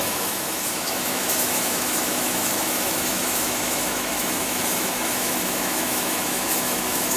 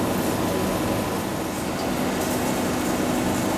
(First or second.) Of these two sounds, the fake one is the first